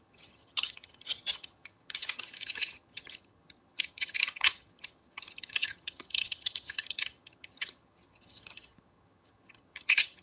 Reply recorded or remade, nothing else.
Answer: remade